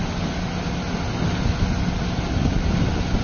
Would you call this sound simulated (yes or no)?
no